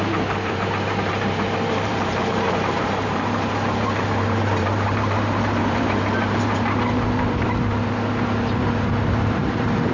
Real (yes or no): no